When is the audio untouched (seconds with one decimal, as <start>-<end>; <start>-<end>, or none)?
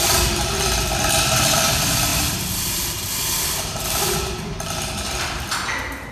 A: 0.0-2.1